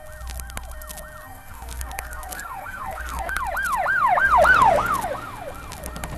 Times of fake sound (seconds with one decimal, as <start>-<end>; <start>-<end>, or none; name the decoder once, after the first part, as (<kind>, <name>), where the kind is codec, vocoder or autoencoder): 1.2-3.4 (codec, SNAC)